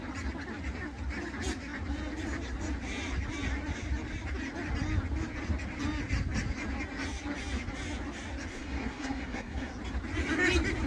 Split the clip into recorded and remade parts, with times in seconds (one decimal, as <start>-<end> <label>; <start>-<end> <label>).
0.0-8.5 recorded; 8.5-9.7 remade; 9.7-10.9 recorded